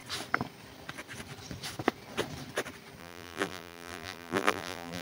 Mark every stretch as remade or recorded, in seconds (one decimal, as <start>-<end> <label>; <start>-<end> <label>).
0.0-3.0 recorded; 3.0-5.0 remade